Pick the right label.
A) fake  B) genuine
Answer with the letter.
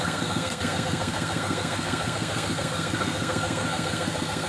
A